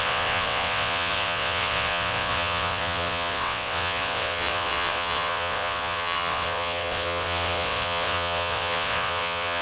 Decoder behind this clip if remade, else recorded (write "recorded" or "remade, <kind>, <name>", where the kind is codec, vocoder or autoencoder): remade, vocoder, WaveNeXt